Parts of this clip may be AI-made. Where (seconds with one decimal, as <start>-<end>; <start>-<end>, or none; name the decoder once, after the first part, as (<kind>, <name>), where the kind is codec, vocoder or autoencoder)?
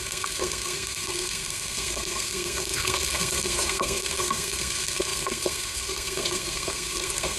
0.0-7.4 (codec, SNAC)